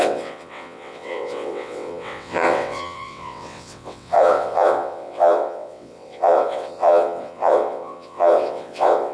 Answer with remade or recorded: remade